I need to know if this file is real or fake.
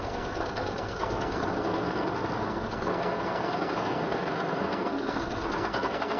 fake